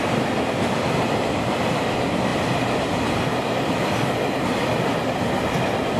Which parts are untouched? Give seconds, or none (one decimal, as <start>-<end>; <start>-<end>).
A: 0.0-6.0